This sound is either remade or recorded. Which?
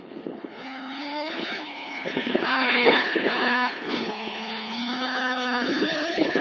remade